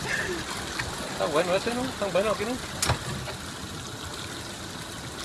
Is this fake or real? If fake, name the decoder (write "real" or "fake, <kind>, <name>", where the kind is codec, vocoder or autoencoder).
real